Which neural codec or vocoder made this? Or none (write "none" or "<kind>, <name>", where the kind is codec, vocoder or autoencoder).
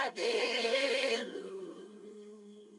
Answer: codec, SNAC